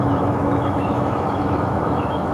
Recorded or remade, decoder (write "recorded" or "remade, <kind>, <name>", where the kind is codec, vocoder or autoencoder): remade, autoencoder, DAC-VAE